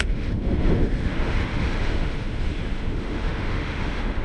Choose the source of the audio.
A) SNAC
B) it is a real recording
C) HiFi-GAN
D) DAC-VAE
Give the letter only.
D